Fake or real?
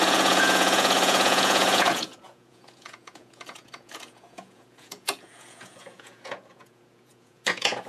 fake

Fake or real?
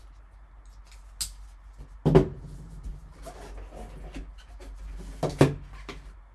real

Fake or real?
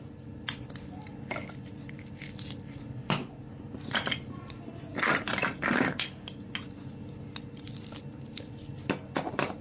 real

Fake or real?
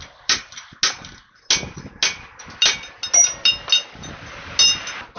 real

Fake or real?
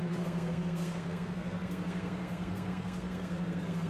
fake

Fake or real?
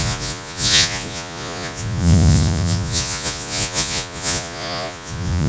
fake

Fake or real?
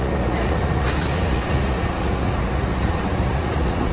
fake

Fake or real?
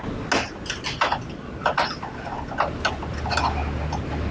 real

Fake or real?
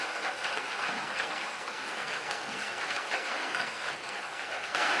fake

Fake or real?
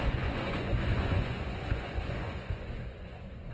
fake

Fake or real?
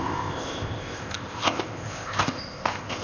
fake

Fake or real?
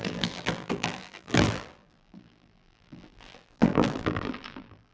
fake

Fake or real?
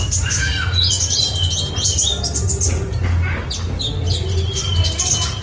real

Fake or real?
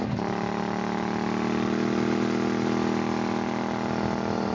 real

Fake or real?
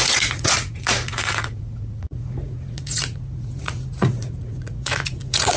fake